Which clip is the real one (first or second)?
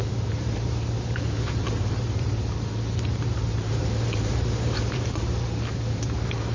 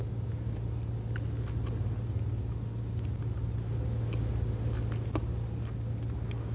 second